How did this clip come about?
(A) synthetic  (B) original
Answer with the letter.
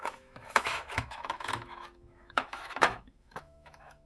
A